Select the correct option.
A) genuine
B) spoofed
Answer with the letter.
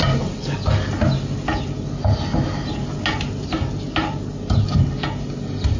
A